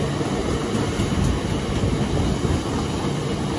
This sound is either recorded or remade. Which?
recorded